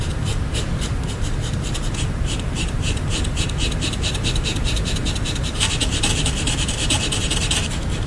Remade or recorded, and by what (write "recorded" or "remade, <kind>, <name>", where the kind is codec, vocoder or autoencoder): remade, vocoder, BigVGAN v2